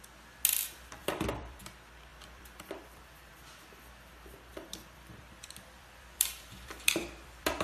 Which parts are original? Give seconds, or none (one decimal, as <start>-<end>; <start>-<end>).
0.0-1.0; 1.6-2.1; 3.3-4.5